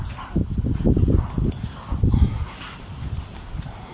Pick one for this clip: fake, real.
real